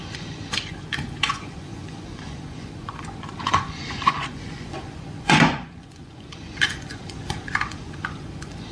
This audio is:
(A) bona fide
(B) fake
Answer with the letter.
B